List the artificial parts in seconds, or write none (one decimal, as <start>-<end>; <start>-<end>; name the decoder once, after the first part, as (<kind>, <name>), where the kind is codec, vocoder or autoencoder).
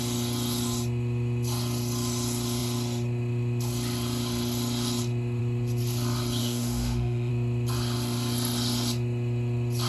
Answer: 6.4-7.3 (autoencoder, DAC-VAE)